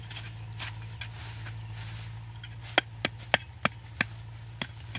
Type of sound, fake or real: real